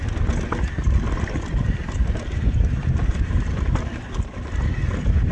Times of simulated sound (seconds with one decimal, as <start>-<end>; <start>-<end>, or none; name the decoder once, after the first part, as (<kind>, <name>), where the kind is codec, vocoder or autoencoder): 1.5-4.7 (vocoder, BigVGAN v2)